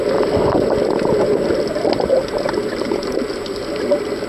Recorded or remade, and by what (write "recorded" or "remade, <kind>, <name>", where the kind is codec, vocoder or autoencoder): recorded